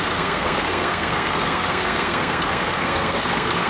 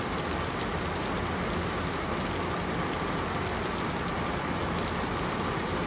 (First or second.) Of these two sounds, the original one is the second